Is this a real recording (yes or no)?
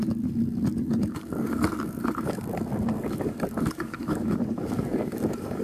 no